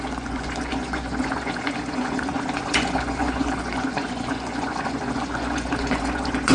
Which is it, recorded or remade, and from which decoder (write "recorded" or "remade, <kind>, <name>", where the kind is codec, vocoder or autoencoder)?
remade, vocoder, Vocos